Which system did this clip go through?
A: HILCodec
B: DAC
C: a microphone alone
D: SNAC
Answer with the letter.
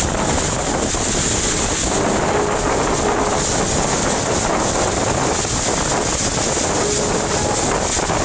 C